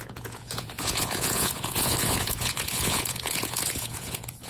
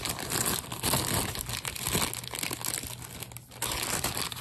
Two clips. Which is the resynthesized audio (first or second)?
first